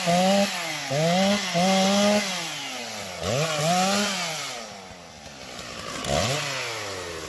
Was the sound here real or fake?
real